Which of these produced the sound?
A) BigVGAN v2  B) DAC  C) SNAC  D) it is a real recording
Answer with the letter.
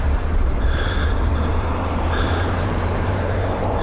A